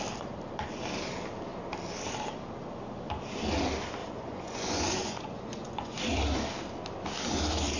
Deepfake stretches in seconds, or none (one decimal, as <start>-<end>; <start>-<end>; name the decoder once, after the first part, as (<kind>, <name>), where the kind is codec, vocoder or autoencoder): 4.0-6.0 (vocoder, Vocos)